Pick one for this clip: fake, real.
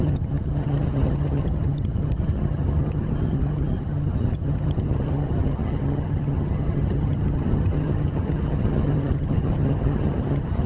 fake